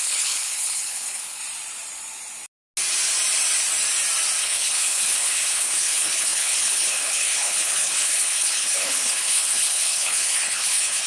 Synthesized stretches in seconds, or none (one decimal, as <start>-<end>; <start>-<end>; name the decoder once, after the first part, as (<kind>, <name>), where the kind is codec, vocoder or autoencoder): 0.0-1.4 (codec, HILCodec); 4.4-11.1